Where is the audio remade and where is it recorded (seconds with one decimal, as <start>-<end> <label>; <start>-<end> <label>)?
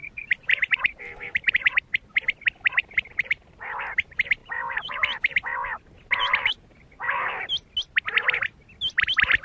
0.0-1.6 remade; 1.6-2.8 recorded; 2.8-3.8 remade; 3.8-4.4 recorded; 4.4-7.2 remade; 7.2-9.4 recorded